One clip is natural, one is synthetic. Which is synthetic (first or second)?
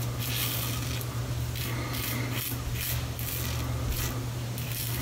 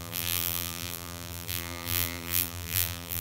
second